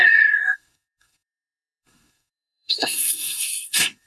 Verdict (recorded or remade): remade